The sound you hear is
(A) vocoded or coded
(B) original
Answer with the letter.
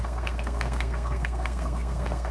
A